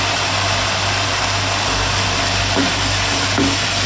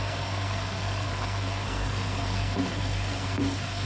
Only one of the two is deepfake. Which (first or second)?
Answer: second